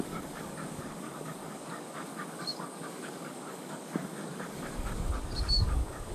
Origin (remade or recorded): remade